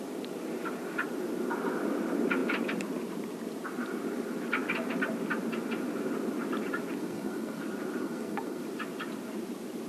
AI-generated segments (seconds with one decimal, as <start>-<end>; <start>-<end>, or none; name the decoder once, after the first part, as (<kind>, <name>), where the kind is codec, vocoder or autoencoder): 7.0-7.6 (codec, SNAC); 8.0-8.6